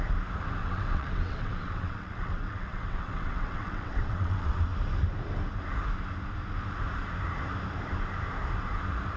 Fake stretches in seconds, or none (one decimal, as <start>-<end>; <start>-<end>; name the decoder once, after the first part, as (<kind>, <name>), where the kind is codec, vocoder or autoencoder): 0.6-4.6 (vocoder, WaveNeXt)